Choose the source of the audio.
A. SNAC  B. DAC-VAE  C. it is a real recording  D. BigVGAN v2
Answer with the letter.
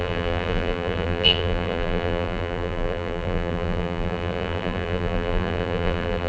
D